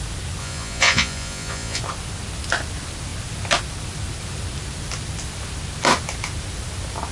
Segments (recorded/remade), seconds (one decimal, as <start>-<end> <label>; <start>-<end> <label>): 0.0-0.4 recorded; 0.4-1.8 remade; 1.8-7.1 recorded